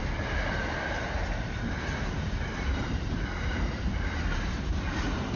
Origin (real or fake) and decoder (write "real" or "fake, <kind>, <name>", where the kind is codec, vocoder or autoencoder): fake, vocoder, BigVGAN v2